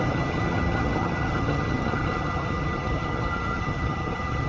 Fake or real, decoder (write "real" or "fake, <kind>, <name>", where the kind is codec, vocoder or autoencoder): fake, vocoder, HiFi-GAN